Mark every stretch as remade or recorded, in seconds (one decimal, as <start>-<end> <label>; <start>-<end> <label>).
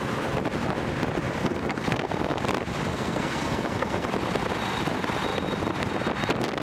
0.0-1.4 recorded; 1.4-2.4 remade; 2.4-2.9 recorded; 2.9-4.1 remade; 4.1-6.6 recorded